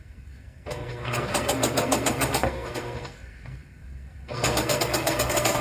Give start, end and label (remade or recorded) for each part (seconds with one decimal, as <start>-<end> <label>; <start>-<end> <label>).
0.0-5.6 remade